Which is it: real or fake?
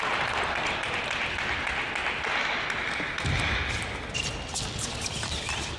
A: real